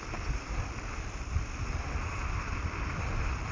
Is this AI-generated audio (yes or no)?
no